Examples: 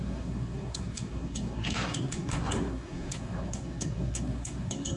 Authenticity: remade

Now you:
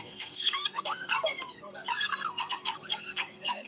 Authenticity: remade